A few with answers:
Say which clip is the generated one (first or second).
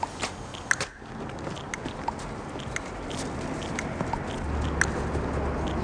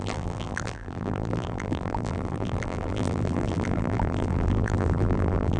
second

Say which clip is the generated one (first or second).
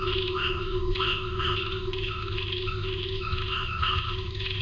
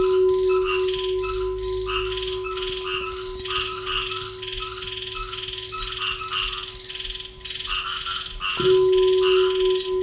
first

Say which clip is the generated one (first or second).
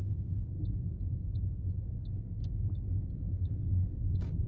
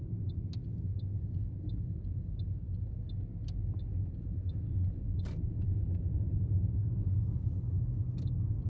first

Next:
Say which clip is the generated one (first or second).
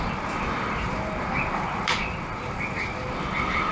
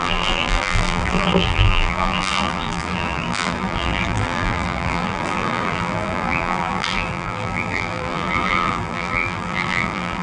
second